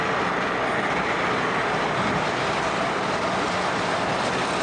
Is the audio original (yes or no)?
yes